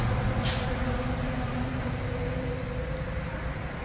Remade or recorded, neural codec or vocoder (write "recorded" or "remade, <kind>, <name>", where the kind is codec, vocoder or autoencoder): recorded